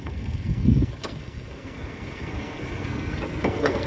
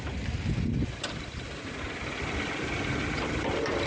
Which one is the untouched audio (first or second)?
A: second